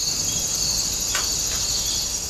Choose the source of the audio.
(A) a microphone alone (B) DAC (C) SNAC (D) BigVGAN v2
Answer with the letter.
A